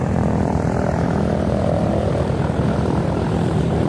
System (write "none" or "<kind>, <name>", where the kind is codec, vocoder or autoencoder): vocoder, BigVGAN v2